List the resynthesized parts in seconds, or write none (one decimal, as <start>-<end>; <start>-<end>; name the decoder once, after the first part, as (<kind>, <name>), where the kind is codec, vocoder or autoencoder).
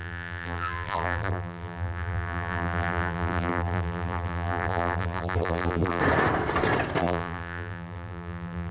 0.0-6.0 (vocoder, BigVGAN v2); 7.0-8.7